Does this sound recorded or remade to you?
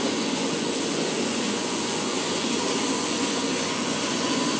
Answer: remade